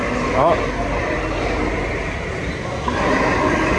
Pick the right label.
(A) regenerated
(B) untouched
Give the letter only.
B